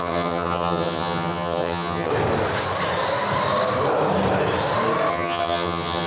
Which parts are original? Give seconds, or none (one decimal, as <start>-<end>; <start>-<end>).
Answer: 2.1-5.1